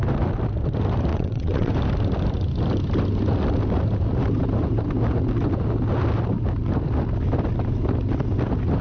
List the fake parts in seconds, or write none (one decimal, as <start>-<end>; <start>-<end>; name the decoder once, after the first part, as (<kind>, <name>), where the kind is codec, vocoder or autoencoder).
1.1-1.7 (vocoder, WaveNeXt)